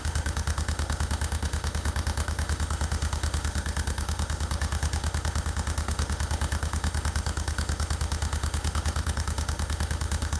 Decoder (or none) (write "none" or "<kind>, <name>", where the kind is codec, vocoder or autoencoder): autoencoder, DAC-VAE